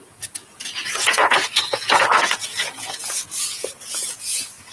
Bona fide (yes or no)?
no